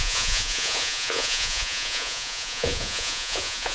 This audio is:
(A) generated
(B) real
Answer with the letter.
A